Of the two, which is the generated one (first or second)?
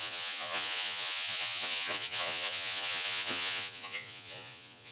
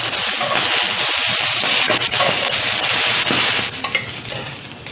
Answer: first